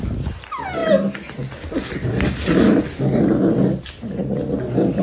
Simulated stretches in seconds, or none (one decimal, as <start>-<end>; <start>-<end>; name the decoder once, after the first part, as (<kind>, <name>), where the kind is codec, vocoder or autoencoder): none